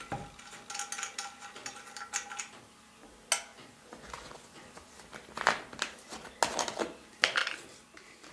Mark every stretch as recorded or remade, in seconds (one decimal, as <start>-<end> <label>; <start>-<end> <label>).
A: 0.0-3.5 recorded; 3.5-4.7 remade; 4.7-8.3 recorded